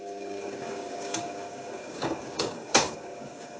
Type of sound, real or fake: fake